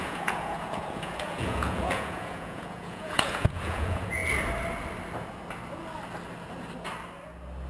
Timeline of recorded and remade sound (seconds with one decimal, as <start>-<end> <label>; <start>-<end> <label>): 0.0-4.2 remade; 4.2-7.7 recorded